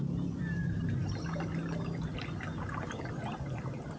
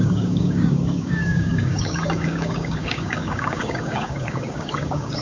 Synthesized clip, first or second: second